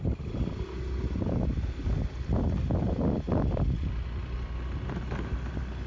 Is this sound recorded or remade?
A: recorded